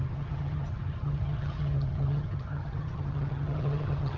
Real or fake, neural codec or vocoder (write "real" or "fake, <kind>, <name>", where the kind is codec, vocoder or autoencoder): fake, vocoder, HiFi-GAN